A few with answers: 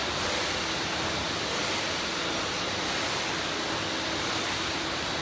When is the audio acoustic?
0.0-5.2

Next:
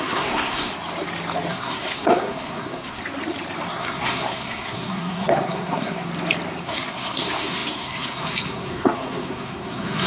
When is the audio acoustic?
0.7-1.5; 3.0-3.7; 6.1-6.6

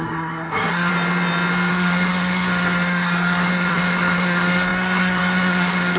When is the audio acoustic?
0.9-1.7

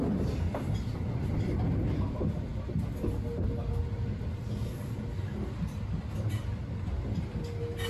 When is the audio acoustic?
0.0-7.9